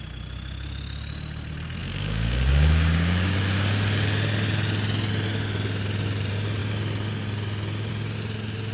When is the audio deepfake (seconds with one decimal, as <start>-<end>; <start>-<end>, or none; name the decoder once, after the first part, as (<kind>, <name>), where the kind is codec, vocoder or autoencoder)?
1.8-3.4 (codec, DAC)